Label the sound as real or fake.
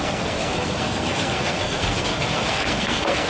fake